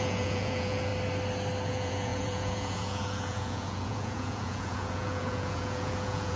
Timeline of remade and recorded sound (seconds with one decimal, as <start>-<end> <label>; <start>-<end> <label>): 0.0-0.9 remade; 0.9-1.7 recorded; 1.7-6.4 remade